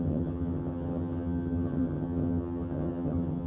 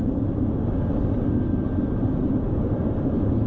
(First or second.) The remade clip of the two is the first